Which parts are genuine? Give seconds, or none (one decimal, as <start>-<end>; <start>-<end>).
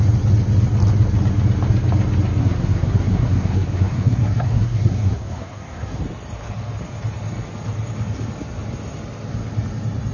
0.0-2.4; 6.0-10.1